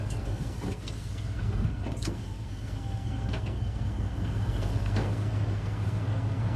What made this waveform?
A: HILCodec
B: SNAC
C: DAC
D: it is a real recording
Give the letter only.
B